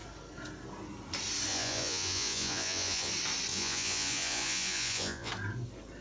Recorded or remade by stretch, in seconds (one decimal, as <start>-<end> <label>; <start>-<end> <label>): 0.0-1.5 recorded; 1.5-3.1 remade; 3.1-3.5 recorded; 3.5-5.3 remade; 5.3-6.0 recorded